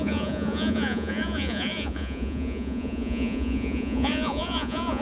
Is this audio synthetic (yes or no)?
yes